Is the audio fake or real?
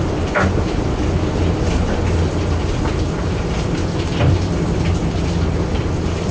real